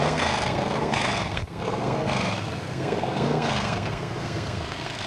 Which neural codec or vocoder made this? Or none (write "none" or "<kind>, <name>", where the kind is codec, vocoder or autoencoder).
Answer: codec, SNAC